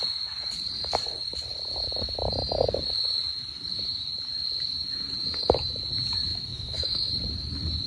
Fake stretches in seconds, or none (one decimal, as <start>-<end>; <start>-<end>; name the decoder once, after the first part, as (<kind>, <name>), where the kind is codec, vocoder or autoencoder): 6.3-7.1 (autoencoder, DAC-VAE)

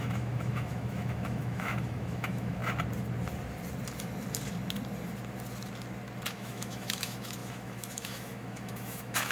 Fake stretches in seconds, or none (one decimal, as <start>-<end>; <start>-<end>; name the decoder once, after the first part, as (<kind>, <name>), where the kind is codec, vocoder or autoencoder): 0.0-2.6 (autoencoder, DAC-VAE); 6.3-9.3

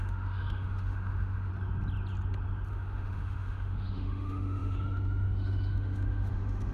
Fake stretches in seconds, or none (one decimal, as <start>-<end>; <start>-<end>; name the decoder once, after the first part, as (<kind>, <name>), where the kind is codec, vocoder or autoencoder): 0.0-1.5 (autoencoder, DAC-VAE); 2.7-6.7

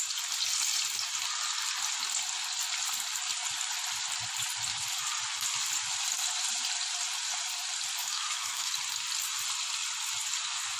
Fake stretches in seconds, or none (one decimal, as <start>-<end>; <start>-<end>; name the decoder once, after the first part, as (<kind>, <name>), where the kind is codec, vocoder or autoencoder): 8.0-8.7 (autoencoder, DAC-VAE)

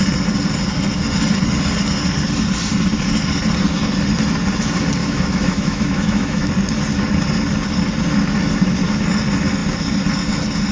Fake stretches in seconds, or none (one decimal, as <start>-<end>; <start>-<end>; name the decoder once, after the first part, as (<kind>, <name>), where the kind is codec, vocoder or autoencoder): 5.0-6.5 (autoencoder, DAC-VAE)